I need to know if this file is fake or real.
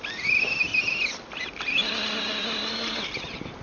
real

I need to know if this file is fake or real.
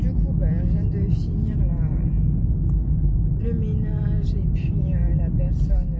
real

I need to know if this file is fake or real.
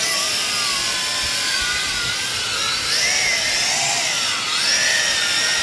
real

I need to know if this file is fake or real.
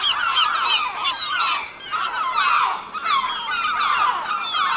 real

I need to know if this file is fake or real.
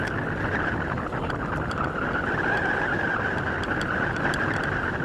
real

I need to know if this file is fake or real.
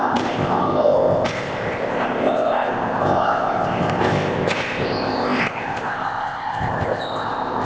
fake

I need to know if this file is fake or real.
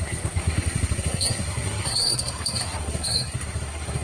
fake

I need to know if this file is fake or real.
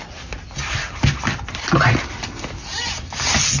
real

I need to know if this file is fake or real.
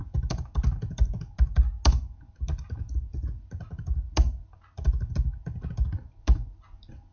real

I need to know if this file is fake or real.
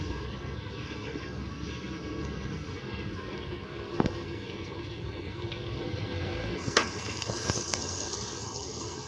fake